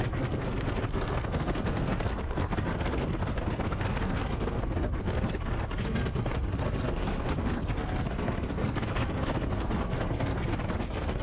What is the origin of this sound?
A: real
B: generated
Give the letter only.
B